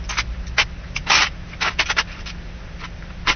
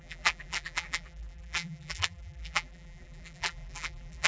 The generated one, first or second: second